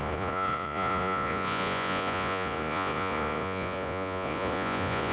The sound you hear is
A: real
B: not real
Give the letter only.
B